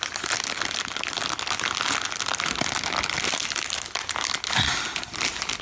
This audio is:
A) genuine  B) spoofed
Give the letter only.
A